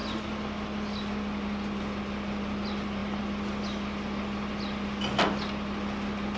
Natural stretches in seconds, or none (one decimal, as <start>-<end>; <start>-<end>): 0.0-6.4